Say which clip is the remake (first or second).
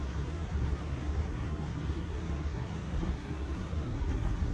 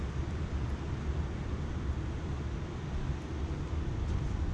first